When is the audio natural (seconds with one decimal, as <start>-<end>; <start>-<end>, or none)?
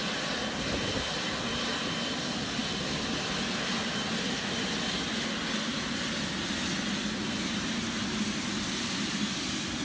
0.0-9.8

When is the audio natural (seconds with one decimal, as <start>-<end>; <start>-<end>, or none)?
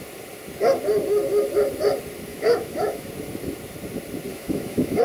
0.0-2.3; 3.1-4.3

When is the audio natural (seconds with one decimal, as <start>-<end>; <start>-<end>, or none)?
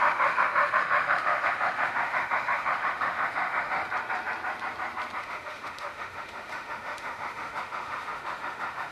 3.8-5.2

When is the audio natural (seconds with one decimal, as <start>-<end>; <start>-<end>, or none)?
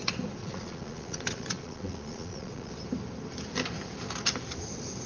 0.0-0.4; 2.7-5.1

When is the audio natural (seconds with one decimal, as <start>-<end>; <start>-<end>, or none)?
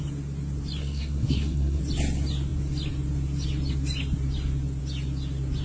0.0-0.8; 1.8-5.6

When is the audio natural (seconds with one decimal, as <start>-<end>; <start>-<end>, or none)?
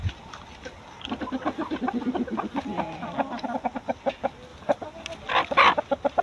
0.0-6.2